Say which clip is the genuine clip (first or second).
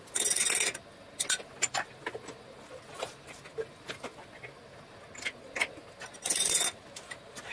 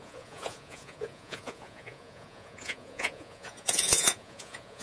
first